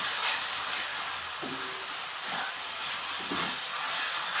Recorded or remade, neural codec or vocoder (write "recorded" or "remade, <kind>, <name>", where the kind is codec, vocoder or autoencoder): recorded